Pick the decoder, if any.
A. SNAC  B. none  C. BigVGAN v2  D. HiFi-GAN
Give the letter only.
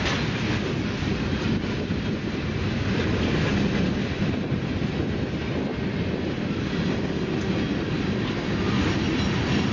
B